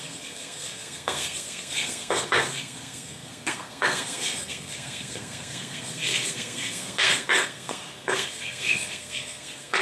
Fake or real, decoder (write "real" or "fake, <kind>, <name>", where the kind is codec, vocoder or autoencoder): fake, codec, SNAC